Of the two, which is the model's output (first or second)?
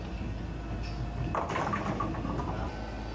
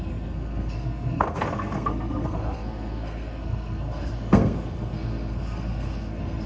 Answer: second